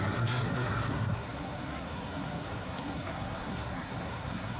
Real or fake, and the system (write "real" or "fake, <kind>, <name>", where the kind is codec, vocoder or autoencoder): fake, codec, SNAC